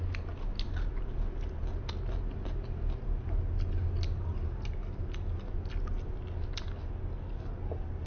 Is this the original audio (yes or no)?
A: yes